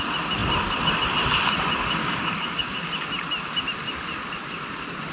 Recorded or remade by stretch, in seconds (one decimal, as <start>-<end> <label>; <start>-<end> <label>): 0.0-2.0 recorded; 2.0-2.9 remade; 2.9-5.1 recorded